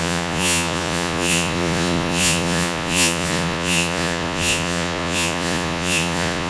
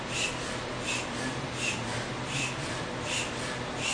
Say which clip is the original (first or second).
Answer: second